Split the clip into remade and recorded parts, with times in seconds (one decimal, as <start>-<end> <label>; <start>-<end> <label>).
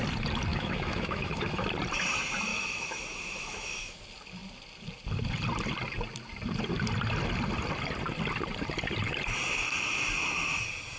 0.0-0.5 recorded; 0.5-1.7 remade; 1.7-2.5 recorded; 2.5-4.0 remade; 4.0-11.0 recorded